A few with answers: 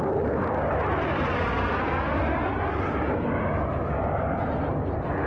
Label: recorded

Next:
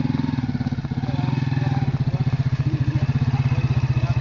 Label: recorded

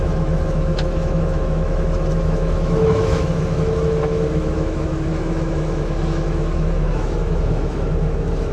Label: remade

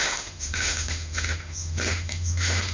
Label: remade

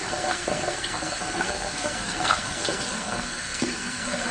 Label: remade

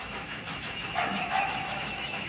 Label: remade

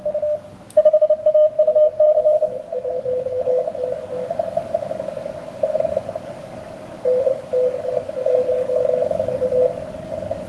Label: remade